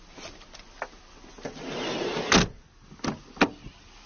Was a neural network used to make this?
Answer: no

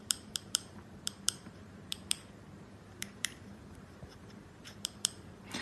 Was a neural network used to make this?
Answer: yes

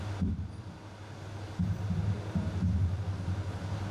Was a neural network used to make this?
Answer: no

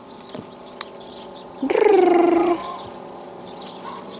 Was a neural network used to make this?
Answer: yes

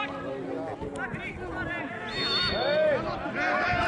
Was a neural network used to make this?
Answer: no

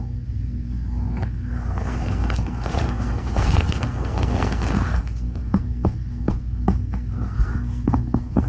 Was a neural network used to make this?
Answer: yes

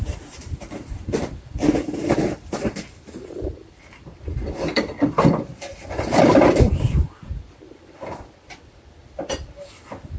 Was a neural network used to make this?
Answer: yes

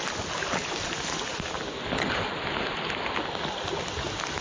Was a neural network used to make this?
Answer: no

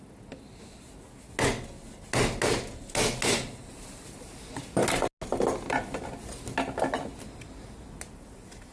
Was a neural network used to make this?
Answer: no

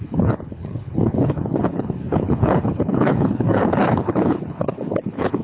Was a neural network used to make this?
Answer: yes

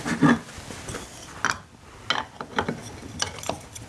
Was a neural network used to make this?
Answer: no